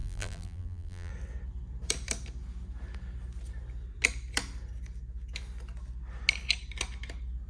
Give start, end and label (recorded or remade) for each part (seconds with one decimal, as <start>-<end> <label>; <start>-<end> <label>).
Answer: 0.0-1.1 remade; 1.1-7.5 recorded

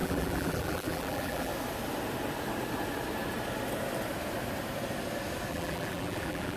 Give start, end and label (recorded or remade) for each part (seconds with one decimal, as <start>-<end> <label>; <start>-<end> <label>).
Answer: 0.0-1.5 remade; 1.5-5.5 recorded; 5.5-6.6 remade

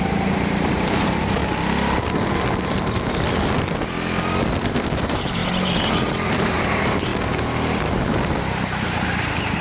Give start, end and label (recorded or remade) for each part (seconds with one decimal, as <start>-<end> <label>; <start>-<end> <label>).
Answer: 0.0-1.4 remade; 1.4-4.6 recorded; 4.6-7.1 remade; 7.1-8.5 recorded; 8.5-9.6 remade

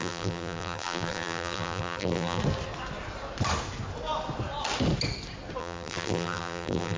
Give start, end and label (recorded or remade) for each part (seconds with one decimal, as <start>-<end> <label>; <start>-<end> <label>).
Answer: 0.0-2.4 remade; 2.4-5.6 recorded; 5.6-7.0 remade